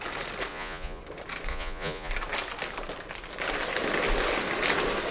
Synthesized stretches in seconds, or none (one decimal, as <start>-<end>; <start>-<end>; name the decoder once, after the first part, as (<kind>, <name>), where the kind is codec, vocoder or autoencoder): 0.5-1.0 (vocoder, Vocos); 1.5-2.1